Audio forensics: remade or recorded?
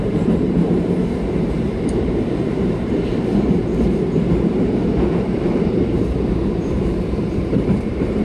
remade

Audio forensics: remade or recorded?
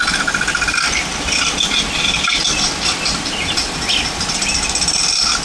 recorded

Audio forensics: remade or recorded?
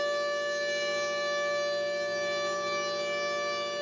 recorded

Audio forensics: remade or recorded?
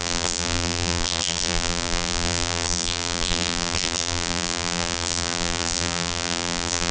remade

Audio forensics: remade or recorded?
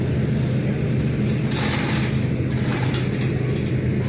recorded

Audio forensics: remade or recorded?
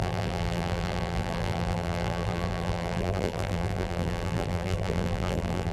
remade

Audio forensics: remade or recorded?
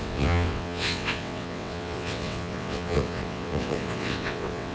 remade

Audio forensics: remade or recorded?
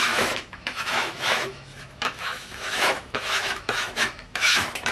remade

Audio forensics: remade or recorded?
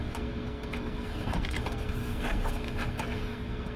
remade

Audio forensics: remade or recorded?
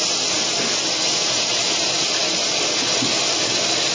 recorded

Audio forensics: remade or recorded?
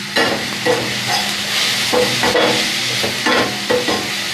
recorded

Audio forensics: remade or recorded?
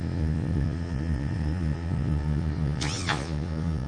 remade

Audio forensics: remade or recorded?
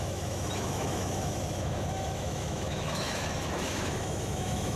remade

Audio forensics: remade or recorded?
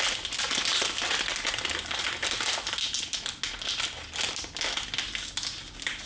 recorded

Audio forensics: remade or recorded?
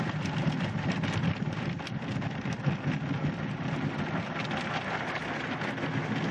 recorded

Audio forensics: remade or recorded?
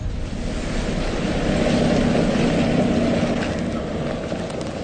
recorded